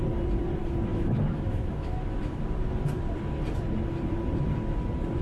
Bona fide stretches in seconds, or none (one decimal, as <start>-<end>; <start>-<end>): 0.0-0.9; 2.5-5.2

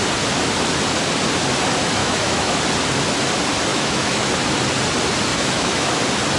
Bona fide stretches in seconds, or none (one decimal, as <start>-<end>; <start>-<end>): 0.0-2.0; 2.6-3.7; 4.3-5.3; 6.0-6.4